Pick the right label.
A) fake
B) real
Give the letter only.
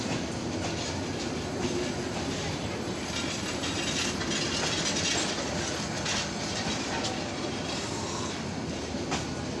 B